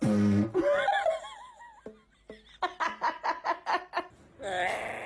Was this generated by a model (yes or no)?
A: no